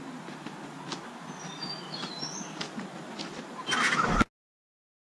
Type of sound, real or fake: real